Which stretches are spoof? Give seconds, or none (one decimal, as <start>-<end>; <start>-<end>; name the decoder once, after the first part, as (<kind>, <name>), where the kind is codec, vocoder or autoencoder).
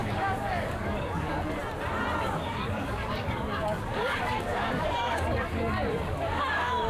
0.0-1.6 (codec, DAC); 2.2-6.9